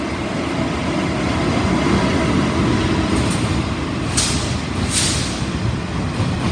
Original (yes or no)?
yes